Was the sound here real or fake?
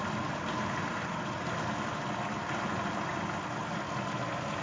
fake